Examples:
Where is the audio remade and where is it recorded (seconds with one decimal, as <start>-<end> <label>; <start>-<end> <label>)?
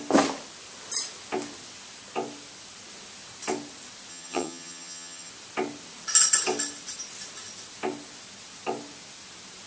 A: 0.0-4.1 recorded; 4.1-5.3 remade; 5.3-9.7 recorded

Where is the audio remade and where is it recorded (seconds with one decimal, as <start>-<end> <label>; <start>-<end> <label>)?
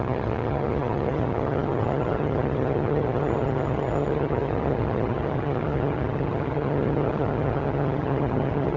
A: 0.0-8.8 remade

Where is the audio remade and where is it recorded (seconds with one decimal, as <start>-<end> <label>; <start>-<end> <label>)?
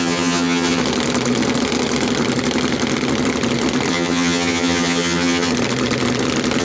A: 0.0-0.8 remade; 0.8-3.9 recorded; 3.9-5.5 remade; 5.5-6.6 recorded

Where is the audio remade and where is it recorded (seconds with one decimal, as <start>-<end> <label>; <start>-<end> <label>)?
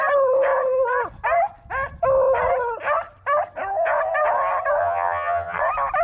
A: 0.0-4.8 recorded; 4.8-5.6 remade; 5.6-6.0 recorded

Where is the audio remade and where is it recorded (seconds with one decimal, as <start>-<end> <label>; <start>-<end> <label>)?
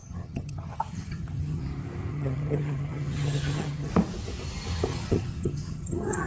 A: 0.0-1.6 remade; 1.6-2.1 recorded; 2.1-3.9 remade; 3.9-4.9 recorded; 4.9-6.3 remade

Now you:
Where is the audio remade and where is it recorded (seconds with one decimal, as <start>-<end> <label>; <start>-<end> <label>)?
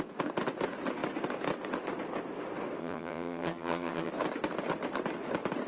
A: 0.0-2.8 recorded; 2.8-4.1 remade; 4.1-5.7 recorded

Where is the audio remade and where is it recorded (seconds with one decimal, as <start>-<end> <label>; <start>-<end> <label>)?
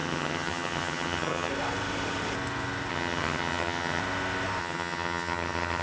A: 0.0-1.5 remade; 1.5-2.9 recorded; 2.9-4.0 remade; 4.0-4.6 recorded; 4.6-5.8 remade